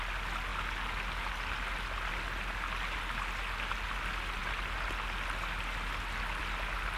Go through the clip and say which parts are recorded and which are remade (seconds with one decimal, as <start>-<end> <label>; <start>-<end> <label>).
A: 0.0-7.0 recorded